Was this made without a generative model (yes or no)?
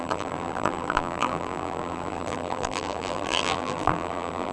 no